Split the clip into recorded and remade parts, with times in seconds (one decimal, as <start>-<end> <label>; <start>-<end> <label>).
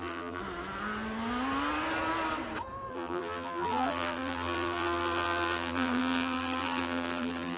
0.0-0.4 remade; 0.4-2.9 recorded; 2.9-7.6 remade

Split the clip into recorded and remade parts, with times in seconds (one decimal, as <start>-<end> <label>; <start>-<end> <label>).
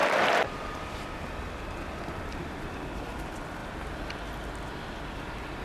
0.0-0.6 recorded; 0.6-3.6 remade; 3.6-5.0 recorded; 5.0-5.6 remade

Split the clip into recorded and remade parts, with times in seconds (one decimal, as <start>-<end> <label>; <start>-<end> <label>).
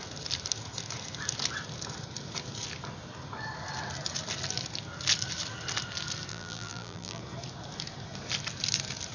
0.0-6.3 recorded; 6.3-7.2 remade; 7.2-9.1 recorded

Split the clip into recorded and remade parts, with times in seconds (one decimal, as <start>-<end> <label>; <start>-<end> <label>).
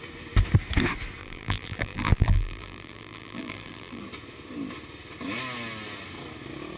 0.0-1.2 recorded; 1.2-4.0 remade; 4.0-6.8 recorded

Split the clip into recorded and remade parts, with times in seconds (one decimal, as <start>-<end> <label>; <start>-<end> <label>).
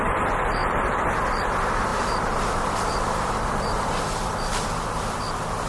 0.0-0.6 recorded; 0.6-1.1 remade; 1.1-1.9 recorded; 1.9-4.0 remade; 4.0-5.7 recorded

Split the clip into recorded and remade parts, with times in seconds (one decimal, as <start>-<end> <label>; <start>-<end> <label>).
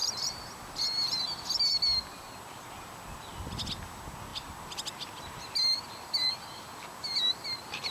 0.0-1.7 remade; 1.7-7.9 recorded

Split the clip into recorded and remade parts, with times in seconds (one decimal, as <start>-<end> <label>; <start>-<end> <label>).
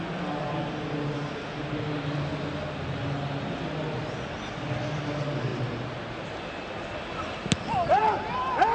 0.0-8.7 recorded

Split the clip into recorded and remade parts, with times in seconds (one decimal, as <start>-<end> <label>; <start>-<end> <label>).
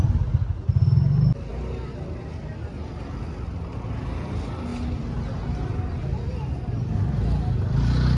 0.0-8.2 recorded